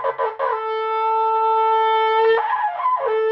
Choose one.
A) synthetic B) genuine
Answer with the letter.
B